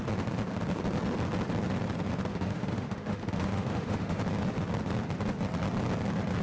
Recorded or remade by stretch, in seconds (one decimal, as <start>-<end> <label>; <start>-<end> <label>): 0.0-2.3 recorded; 2.3-4.2 remade; 4.2-6.4 recorded